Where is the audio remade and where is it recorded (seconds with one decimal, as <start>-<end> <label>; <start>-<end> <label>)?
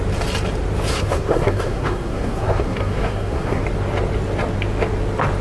0.0-0.9 recorded; 0.9-3.6 remade; 3.6-5.4 recorded